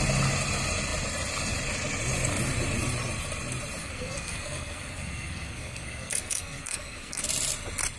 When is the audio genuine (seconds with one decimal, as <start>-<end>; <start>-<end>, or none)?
0.0-3.8; 7.2-8.0